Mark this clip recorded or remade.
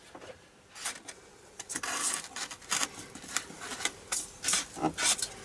recorded